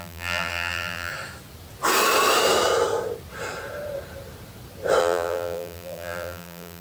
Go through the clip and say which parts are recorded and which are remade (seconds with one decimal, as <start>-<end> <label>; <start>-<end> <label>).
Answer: 0.0-1.1 remade; 1.1-5.0 recorded; 5.0-6.8 remade